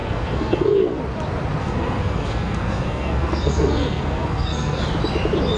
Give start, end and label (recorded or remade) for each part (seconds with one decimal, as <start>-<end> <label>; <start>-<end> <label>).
0.0-1.0 remade; 1.0-1.6 recorded; 1.6-4.8 remade; 4.8-5.6 recorded